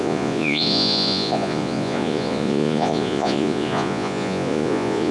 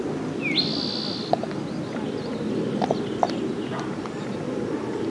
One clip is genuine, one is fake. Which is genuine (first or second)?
second